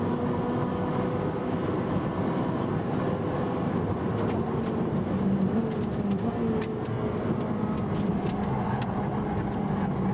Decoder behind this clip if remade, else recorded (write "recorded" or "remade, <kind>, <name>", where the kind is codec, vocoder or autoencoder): recorded